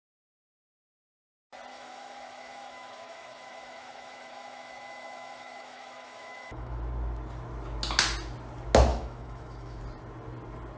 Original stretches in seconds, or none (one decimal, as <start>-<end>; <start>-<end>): 0.0-1.7; 6.8-8.9; 9.8-10.8